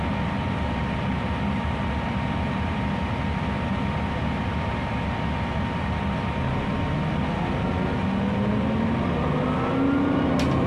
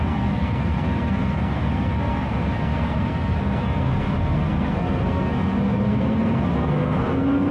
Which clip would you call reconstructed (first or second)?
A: second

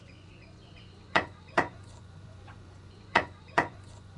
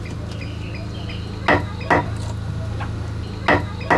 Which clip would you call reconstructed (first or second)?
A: first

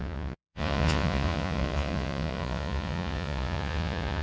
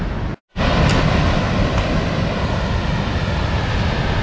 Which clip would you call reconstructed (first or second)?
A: first